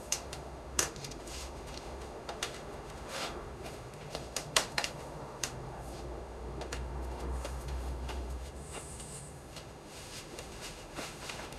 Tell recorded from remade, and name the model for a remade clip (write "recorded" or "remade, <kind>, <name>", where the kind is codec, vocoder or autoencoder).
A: remade, autoencoder, DAC-VAE